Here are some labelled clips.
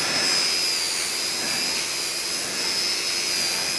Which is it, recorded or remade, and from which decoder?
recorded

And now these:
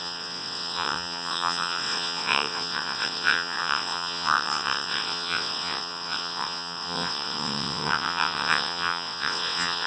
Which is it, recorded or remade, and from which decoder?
remade, vocoder, WaveNeXt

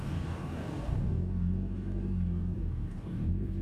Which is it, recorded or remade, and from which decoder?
remade, codec, DAC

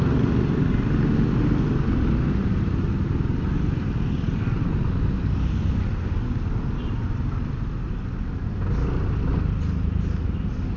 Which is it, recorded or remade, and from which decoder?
recorded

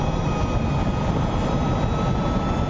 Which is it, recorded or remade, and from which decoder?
recorded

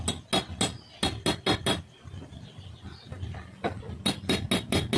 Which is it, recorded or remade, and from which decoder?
recorded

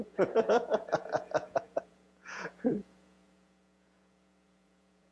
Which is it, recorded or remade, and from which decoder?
remade, vocoder, Vocos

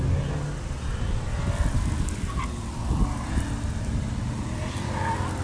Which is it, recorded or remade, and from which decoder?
recorded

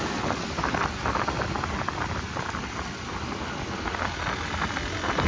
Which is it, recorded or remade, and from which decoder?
recorded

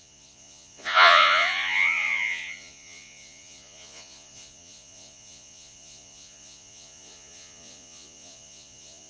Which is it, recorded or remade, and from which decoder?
remade, vocoder, Vocos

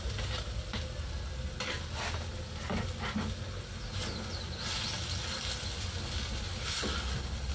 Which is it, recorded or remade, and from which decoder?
recorded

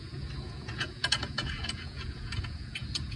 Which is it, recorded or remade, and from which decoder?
remade, vocoder, Vocos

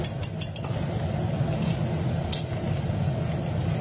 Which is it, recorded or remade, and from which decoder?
recorded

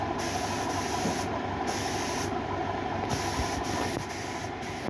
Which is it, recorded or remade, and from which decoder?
remade, vocoder, BigVGAN v2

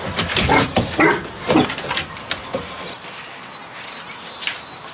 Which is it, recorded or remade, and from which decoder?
recorded